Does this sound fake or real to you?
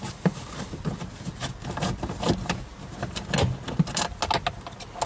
real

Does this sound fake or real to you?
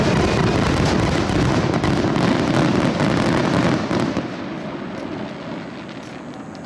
real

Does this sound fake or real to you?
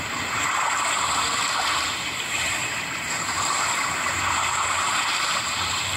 fake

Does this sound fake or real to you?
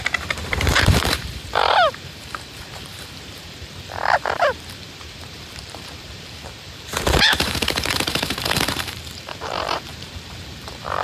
fake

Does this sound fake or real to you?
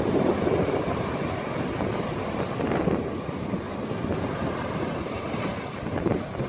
real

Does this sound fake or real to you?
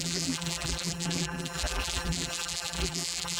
fake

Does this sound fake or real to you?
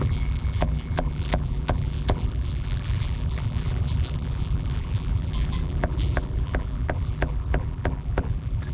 fake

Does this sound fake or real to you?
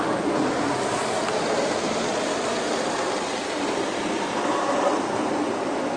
fake